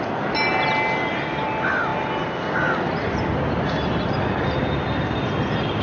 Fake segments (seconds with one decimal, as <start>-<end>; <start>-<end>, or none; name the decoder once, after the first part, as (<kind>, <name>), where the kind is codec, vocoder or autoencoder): none

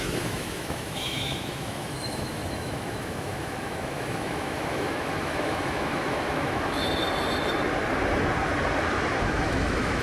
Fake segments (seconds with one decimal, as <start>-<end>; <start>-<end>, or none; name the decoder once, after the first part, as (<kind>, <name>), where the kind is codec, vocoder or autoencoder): 0.0-6.8 (autoencoder, DAC-VAE); 9.2-10.0

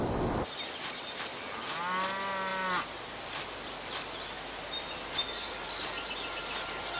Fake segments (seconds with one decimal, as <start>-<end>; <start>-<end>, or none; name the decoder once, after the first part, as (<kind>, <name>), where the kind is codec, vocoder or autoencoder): none

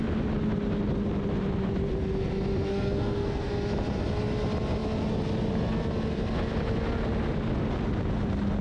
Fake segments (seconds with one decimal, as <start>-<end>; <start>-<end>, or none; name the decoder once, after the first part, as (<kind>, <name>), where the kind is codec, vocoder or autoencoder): 2.7-3.5 (codec, SNAC)

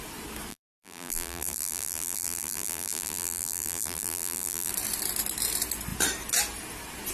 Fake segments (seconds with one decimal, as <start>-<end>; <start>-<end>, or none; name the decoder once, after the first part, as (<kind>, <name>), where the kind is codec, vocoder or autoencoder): 0.5-4.7 (vocoder, BigVGAN v2)

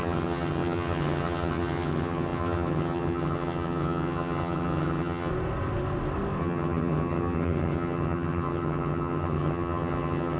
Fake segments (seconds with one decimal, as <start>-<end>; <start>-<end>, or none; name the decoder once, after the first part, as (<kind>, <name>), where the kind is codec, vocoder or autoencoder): 0.0-5.3 (vocoder, HiFi-GAN); 6.4-10.4